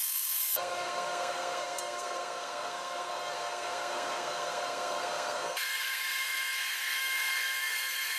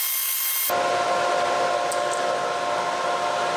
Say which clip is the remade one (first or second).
first